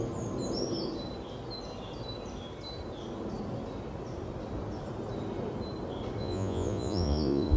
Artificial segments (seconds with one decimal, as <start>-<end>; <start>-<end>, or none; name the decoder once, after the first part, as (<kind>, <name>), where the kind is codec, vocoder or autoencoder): 6.2-7.6 (vocoder, Vocos)